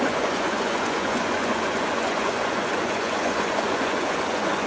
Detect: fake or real fake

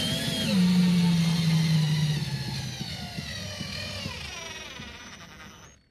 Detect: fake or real real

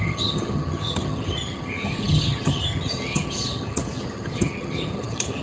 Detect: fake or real fake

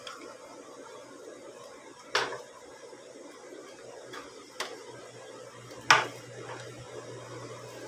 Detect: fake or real real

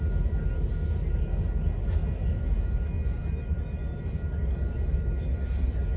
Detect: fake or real real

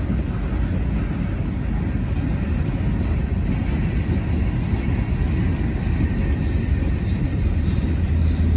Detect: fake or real real